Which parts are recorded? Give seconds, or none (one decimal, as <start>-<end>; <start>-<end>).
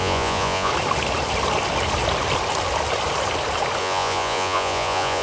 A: 0.7-3.8